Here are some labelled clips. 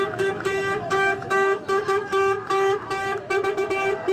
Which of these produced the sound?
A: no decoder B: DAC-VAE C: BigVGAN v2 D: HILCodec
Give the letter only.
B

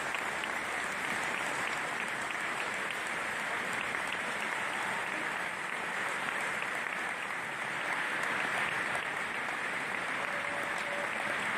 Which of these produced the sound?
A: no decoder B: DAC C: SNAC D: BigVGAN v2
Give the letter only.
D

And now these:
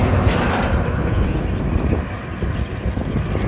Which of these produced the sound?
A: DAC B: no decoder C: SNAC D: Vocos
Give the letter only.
B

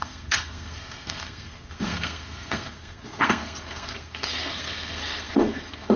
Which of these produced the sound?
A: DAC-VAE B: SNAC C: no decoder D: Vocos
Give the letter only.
B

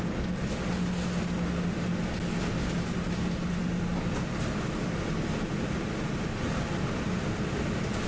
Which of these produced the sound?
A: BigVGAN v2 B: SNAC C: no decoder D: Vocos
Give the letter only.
C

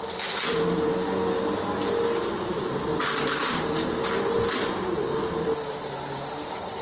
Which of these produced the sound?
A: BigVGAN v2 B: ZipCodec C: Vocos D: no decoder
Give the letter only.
D